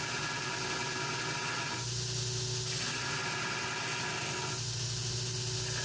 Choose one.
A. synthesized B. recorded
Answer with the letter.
B